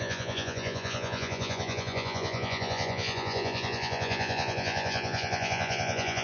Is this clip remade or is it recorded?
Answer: remade